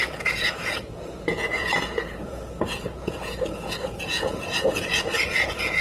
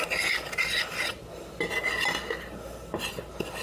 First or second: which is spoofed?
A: first